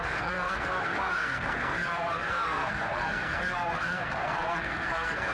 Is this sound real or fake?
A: fake